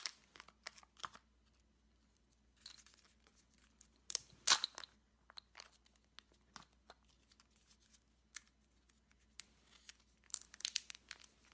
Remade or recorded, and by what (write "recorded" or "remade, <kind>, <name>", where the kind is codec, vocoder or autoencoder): recorded